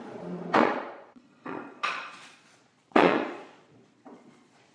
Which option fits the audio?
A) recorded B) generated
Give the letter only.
B